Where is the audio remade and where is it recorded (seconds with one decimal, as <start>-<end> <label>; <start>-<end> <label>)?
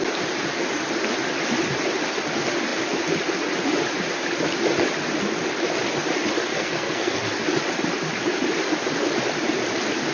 0.0-6.5 recorded; 6.5-7.2 remade; 7.2-10.1 recorded